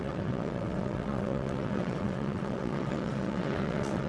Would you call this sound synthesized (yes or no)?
yes